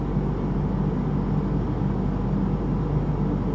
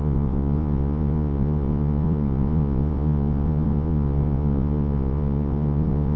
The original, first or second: first